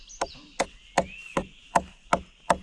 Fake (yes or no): no